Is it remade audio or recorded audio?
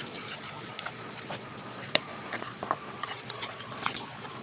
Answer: remade